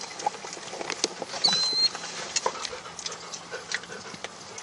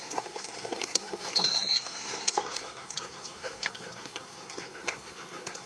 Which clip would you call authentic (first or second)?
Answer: first